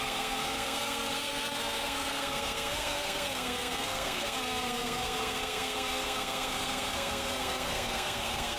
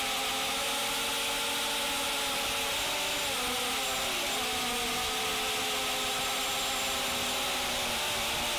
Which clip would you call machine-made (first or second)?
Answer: first